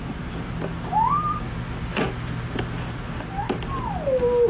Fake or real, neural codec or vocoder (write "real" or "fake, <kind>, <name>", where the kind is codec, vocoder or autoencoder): real